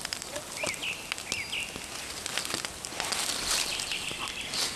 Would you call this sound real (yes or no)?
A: yes